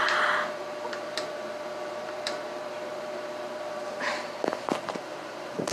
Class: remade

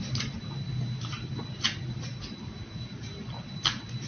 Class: recorded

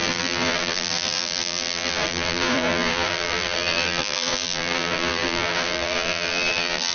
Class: remade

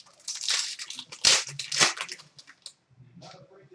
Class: recorded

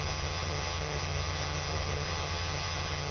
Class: remade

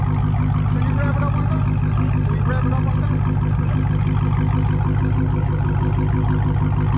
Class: recorded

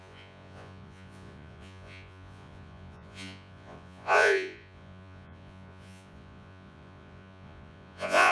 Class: remade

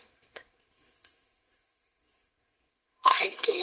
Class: remade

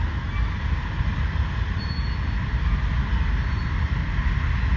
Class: recorded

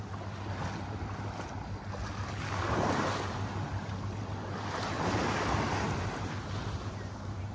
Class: recorded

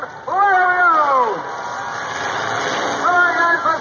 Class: recorded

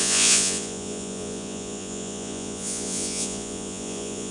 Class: remade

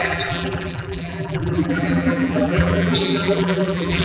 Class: remade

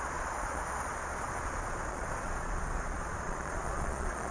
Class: remade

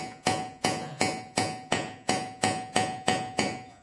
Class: remade